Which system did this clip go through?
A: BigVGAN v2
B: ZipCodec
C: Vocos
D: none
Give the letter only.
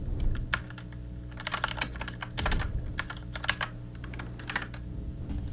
D